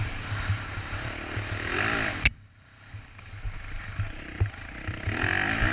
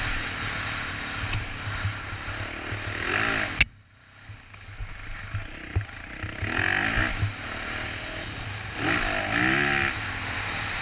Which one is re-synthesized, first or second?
first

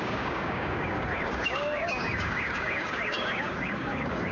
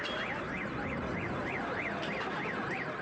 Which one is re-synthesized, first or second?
first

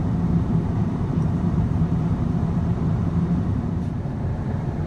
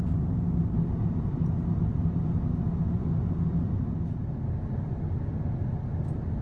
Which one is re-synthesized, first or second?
first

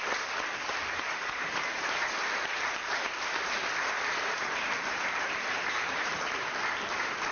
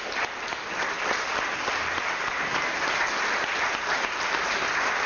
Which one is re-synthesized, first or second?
first